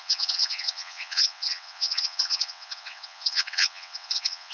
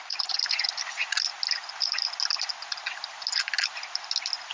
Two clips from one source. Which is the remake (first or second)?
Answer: first